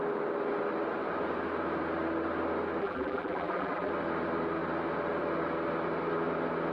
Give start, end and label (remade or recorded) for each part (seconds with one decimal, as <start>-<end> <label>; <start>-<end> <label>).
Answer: 0.0-2.8 recorded; 2.8-3.9 remade; 3.9-6.7 recorded